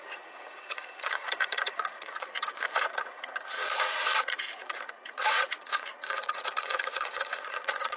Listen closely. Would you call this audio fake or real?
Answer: fake